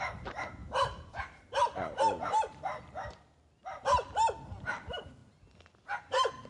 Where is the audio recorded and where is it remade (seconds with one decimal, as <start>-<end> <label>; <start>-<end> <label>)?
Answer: 0.0-4.0 remade; 4.0-4.6 recorded; 4.6-5.2 remade; 5.2-6.0 recorded; 6.0-6.5 remade